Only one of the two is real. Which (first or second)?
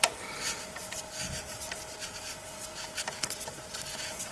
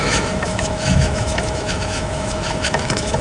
first